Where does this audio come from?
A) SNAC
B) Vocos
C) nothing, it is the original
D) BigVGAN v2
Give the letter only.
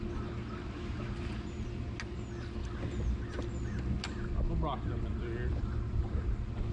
C